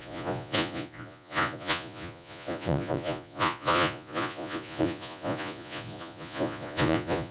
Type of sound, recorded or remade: remade